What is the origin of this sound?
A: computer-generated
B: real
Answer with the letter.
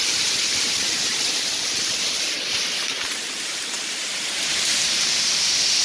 A